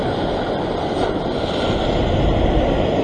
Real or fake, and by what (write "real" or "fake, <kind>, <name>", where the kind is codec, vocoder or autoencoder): real